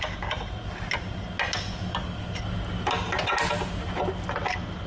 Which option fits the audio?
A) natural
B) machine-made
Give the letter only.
A